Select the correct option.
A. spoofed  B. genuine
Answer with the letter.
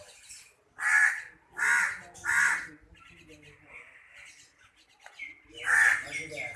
B